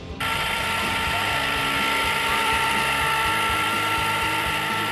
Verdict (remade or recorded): remade